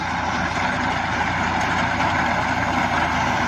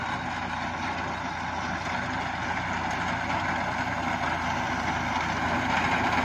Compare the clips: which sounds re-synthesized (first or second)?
first